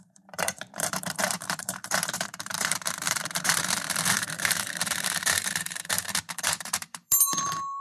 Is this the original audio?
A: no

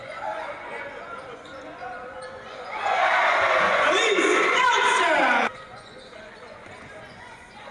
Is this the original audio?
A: no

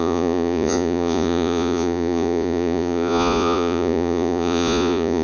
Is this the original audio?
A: no